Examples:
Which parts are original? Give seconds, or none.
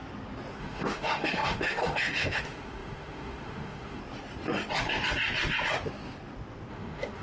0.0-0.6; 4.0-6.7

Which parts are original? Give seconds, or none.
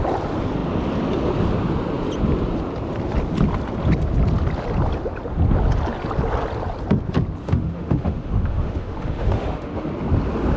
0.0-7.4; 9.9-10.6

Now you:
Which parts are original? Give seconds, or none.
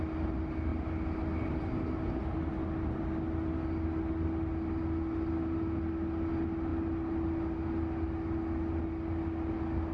0.0-9.9